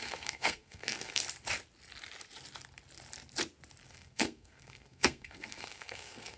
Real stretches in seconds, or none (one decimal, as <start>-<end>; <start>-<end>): 1.2-3.9